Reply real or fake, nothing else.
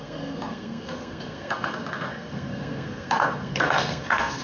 fake